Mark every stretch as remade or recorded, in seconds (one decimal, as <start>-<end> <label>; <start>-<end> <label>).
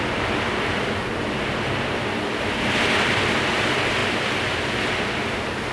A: 0.0-5.7 recorded